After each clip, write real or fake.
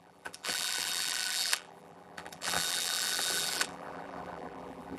fake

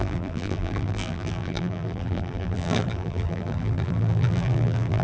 fake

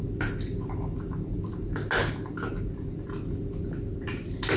real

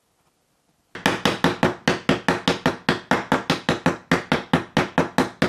real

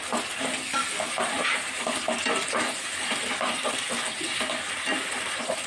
real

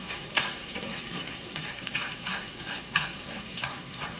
fake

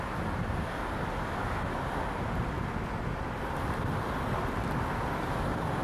real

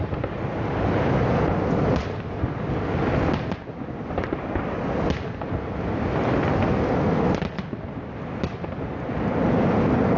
real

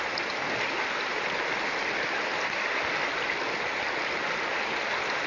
real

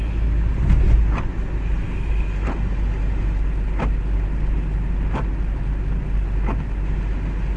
real